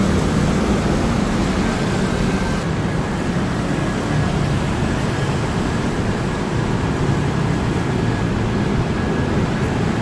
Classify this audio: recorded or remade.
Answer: recorded